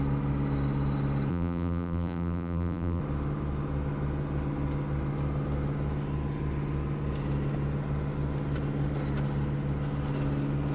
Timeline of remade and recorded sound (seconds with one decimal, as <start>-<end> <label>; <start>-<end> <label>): 0.0-1.3 recorded; 1.3-3.0 remade; 3.0-10.7 recorded